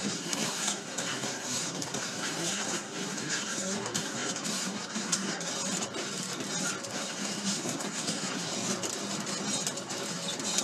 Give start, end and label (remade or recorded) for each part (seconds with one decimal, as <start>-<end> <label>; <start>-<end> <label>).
0.0-5.5 remade; 5.5-6.9 recorded; 6.9-8.5 remade; 8.5-10.6 recorded